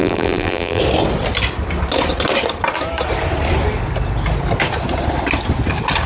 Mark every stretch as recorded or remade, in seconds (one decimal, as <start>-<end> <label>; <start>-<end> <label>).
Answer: 0.0-0.8 remade; 0.8-6.1 recorded

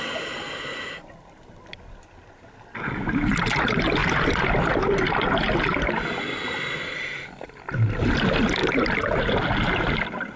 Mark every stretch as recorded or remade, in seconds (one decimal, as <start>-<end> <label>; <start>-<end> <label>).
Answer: 0.0-10.4 recorded

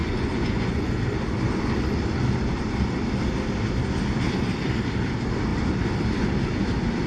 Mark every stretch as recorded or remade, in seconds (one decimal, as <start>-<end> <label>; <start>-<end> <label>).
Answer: 0.0-1.0 remade; 1.0-7.1 recorded

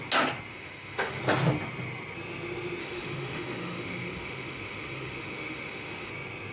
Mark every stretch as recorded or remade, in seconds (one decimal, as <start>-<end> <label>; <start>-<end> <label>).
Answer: 0.0-0.5 recorded; 0.5-1.2 remade; 1.2-2.8 recorded; 2.8-6.1 remade; 6.1-6.5 recorded

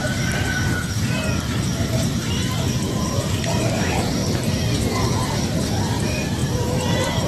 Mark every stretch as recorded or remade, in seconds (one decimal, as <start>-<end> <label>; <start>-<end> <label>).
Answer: 0.0-4.2 remade; 4.2-5.4 recorded; 5.4-7.3 remade